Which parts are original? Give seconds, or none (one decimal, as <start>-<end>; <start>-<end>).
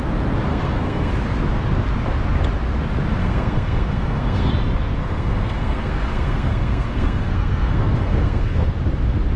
0.0-0.5; 1.1-3.2; 4.5-5.0; 8.7-9.4